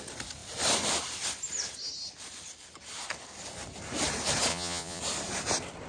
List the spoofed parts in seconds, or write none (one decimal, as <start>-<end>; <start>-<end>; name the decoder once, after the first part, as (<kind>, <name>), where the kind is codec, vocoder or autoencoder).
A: 4.5-5.0 (vocoder, Vocos)

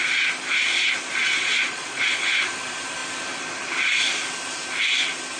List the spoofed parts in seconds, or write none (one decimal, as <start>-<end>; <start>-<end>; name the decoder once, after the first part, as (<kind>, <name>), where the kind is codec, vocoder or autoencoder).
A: 1.2-2.1 (vocoder, Vocos)

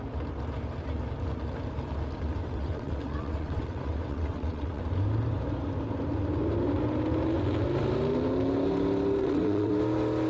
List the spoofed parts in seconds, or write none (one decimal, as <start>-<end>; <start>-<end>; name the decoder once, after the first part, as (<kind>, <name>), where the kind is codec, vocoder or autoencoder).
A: 2.4-4.8 (vocoder, WaveNeXt); 9.2-9.7

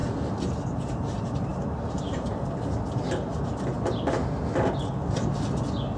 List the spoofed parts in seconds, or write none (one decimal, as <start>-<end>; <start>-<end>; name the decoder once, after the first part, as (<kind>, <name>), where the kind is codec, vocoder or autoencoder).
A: 1.5-2.6 (vocoder, BigVGAN v2)

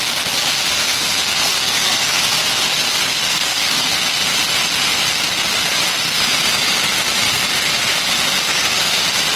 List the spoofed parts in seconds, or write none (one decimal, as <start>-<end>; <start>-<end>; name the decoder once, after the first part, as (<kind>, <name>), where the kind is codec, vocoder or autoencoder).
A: 0.8-2.2 (codec, SNAC); 3.3-4.0; 8.5-9.0

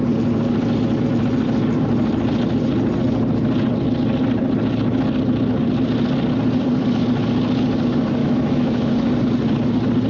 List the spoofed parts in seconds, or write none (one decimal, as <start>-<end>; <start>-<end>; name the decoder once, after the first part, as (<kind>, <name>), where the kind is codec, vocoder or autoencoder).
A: 8.2-8.9 (autoencoder, DAC-VAE)

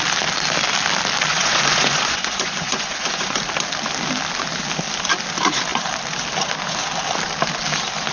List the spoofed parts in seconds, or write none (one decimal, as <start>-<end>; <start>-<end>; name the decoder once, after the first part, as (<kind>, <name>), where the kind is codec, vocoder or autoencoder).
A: 1.3-3.4 (vocoder, Vocos)